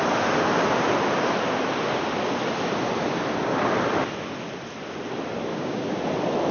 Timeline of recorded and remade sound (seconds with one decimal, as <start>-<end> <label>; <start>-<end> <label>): 0.0-5.5 recorded; 5.5-6.0 remade; 6.0-6.5 recorded